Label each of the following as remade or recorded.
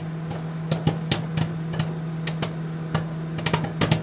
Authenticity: recorded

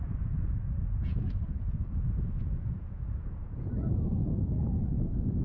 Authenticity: remade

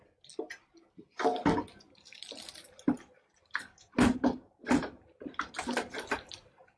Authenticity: recorded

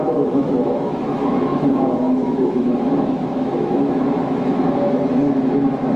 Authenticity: remade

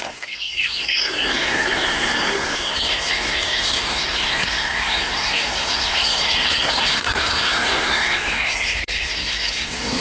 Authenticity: remade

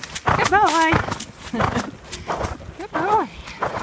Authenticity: recorded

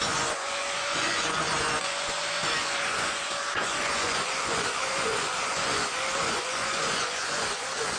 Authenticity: remade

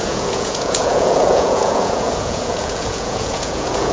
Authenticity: remade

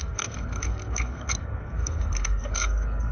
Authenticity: remade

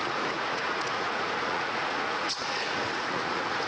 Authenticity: remade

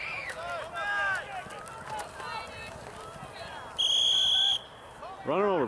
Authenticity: recorded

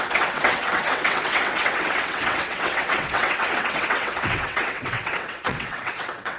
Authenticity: remade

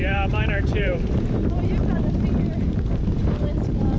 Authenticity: remade